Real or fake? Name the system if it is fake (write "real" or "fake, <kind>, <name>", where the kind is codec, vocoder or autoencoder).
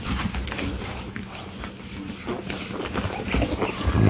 real